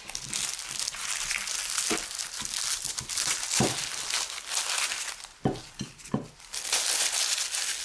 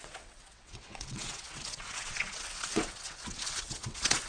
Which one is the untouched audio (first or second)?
first